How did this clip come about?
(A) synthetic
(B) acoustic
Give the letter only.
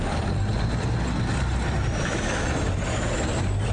B